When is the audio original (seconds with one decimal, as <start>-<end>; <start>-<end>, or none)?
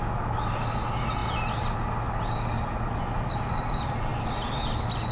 0.0-5.1